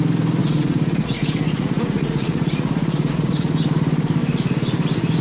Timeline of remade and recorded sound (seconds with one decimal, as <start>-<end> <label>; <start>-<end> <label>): 0.0-0.4 recorded; 0.4-3.5 remade; 3.5-5.2 recorded